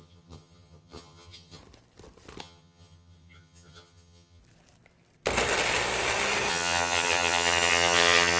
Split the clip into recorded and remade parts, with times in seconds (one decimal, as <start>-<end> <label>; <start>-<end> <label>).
0.0-1.6 remade; 1.6-2.4 recorded; 2.4-4.4 remade; 4.4-6.5 recorded; 6.5-8.4 remade